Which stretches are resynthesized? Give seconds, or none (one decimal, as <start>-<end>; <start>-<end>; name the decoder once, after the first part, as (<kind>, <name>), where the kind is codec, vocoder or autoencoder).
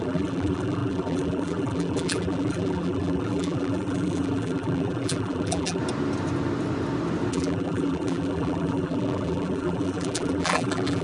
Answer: 0.0-5.8 (vocoder, BigVGAN v2); 7.3-11.0